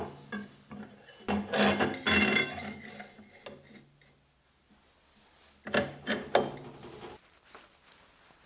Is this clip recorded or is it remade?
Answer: recorded